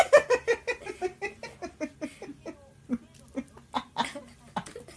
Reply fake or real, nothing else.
real